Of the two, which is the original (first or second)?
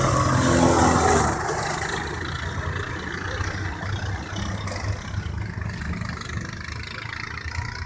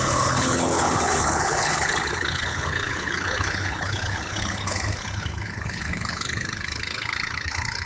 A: first